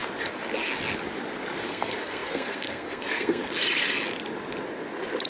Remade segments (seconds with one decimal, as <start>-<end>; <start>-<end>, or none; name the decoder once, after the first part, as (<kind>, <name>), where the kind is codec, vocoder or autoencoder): 1.7-3.4 (codec, SNAC)

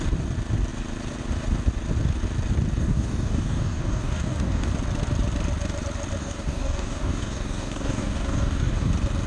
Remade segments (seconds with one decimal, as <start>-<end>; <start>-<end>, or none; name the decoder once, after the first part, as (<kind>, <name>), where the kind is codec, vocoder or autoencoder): 2.8-4.7 (codec, DAC); 6.2-8.9